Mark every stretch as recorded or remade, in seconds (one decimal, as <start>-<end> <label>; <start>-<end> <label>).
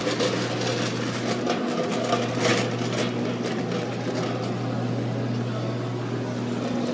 0.0-6.9 recorded